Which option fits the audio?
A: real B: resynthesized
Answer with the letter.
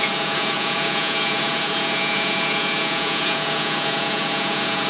B